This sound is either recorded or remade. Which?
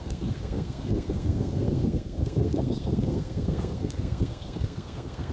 remade